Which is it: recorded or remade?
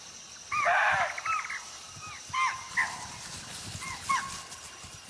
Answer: recorded